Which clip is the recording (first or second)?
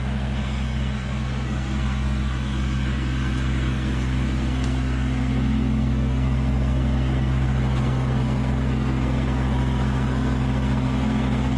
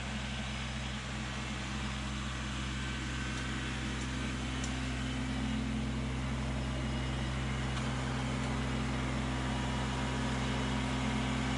second